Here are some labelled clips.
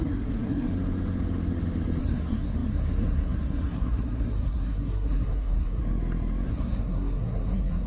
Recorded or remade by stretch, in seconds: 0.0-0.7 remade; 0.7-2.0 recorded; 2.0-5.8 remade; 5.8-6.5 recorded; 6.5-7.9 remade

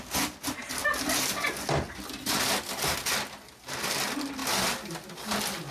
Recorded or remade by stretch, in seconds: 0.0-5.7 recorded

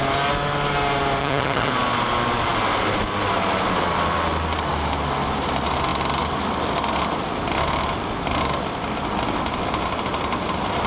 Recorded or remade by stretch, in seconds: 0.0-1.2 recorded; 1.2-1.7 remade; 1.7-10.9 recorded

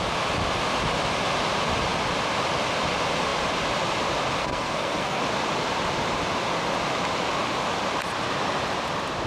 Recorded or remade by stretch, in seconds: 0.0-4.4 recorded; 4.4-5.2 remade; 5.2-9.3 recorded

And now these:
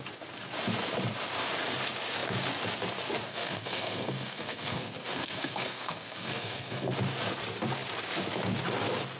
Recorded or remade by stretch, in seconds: 0.0-3.3 recorded; 3.3-6.9 remade; 6.9-9.2 recorded